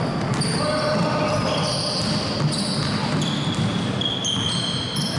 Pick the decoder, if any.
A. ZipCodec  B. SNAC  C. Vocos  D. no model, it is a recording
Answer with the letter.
D